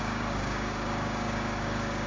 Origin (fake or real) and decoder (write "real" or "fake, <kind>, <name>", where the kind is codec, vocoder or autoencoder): fake, codec, DAC